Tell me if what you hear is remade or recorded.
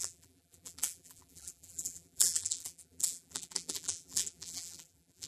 remade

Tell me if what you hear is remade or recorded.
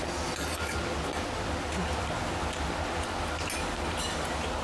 recorded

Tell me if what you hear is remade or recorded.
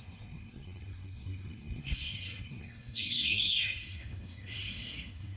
remade